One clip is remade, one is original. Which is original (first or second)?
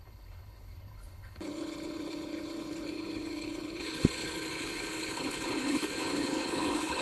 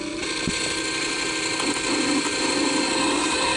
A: second